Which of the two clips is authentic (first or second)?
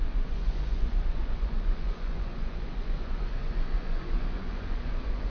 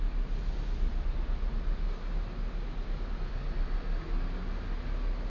second